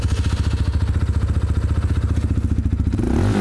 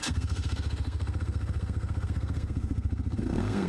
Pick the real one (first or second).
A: first